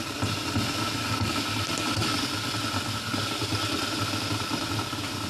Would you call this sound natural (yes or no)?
yes